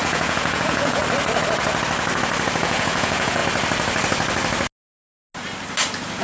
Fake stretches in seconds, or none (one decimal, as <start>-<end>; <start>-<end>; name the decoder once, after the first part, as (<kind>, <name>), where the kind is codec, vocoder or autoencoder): 0.0-1.0 (vocoder, Vocos); 2.6-3.4